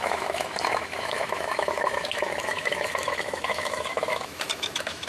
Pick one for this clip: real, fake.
fake